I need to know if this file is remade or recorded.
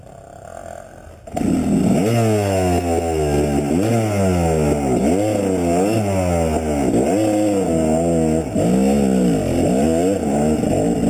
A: recorded